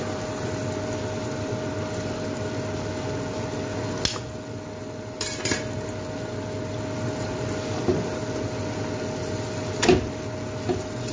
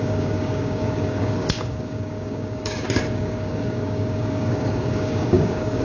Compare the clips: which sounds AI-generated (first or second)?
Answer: second